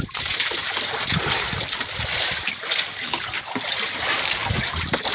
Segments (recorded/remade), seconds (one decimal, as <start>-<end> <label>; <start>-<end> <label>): 0.0-5.1 recorded